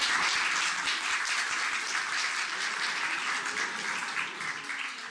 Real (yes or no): yes